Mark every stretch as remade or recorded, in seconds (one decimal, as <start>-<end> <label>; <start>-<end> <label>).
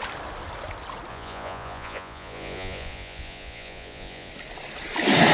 0.0-1.1 recorded; 1.1-4.3 remade; 4.3-5.3 recorded